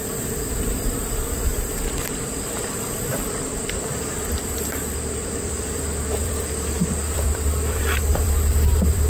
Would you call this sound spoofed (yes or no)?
yes